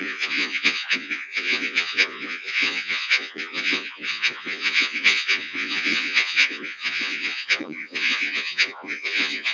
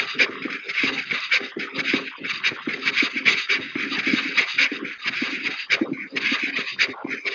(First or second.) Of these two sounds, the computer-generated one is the first